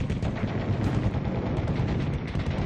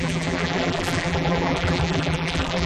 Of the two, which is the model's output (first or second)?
second